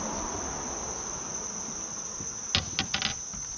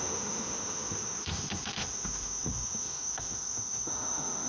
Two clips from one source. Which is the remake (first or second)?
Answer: second